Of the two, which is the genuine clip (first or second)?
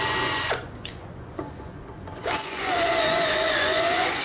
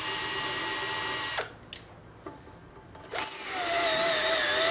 second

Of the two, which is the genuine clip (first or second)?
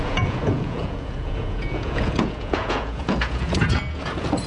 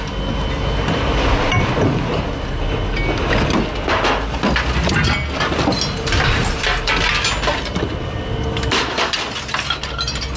second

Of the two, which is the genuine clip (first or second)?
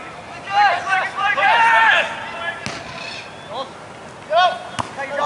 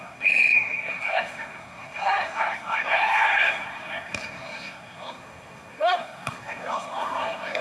first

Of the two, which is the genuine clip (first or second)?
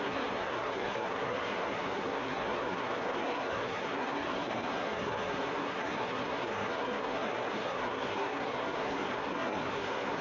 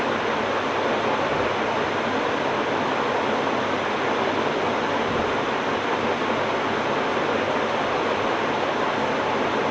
second